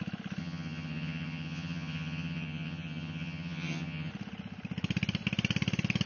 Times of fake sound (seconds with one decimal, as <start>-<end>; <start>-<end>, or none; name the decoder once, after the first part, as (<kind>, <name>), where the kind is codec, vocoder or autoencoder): 0.4-4.1 (vocoder, HiFi-GAN)

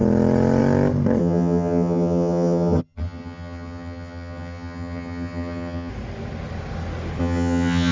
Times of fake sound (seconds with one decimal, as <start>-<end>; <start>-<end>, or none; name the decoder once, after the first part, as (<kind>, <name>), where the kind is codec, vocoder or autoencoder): 1.2-5.9 (vocoder, HiFi-GAN); 7.2-7.9

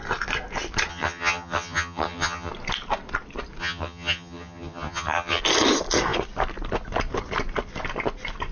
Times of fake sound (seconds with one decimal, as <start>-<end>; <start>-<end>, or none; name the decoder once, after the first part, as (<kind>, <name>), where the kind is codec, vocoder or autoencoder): 0.9-2.5 (vocoder, HiFi-GAN); 3.6-5.4

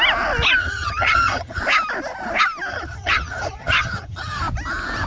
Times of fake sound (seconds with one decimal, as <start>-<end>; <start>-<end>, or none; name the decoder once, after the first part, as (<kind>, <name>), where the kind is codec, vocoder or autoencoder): 0.6-1.6 (vocoder, HiFi-GAN); 2.7-4.4

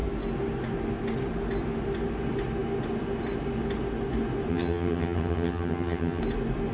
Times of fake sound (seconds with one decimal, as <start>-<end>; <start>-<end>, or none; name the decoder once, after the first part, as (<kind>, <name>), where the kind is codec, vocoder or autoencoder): 4.5-6.2 (vocoder, HiFi-GAN)